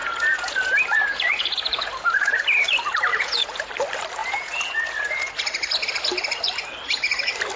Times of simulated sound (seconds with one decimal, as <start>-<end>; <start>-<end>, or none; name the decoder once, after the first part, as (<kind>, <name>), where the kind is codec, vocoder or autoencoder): 0.0-2.4 (vocoder, Vocos); 3.1-3.7; 4.2-5.3